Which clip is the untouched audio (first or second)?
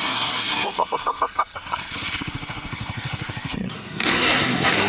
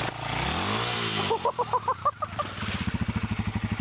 second